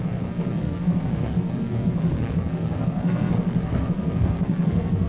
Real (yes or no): no